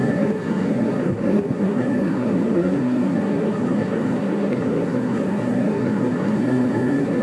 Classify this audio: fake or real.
fake